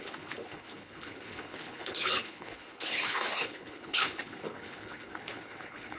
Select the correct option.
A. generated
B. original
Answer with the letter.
A